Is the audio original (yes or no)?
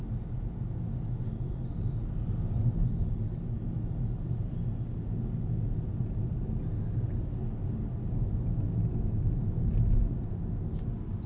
yes